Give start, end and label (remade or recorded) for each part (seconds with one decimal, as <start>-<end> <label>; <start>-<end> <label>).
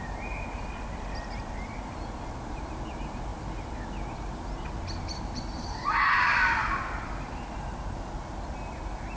0.0-9.2 recorded